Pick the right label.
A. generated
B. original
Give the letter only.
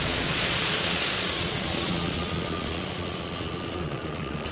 A